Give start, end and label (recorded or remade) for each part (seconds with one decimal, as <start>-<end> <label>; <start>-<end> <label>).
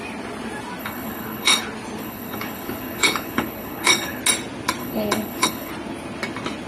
0.0-0.8 recorded; 0.8-1.6 remade; 1.6-2.0 recorded; 2.0-4.2 remade; 4.2-4.8 recorded; 4.8-5.7 remade; 5.7-6.7 recorded